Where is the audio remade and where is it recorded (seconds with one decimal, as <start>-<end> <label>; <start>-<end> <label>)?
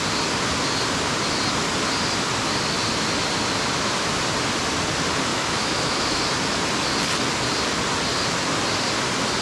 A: 0.0-5.3 recorded; 5.3-6.2 remade; 6.2-9.4 recorded